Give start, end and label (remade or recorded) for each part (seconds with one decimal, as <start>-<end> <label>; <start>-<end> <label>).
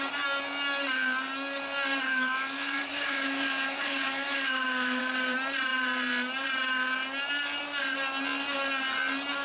0.0-2.1 recorded; 2.1-5.0 remade; 5.0-9.4 recorded